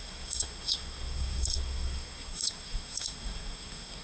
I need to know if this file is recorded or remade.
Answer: remade